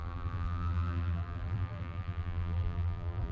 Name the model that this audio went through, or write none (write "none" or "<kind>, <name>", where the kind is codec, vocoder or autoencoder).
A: vocoder, BigVGAN v2